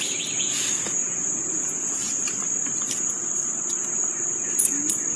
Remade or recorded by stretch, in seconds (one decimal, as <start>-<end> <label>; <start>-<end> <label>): 0.0-2.0 remade; 2.0-5.2 recorded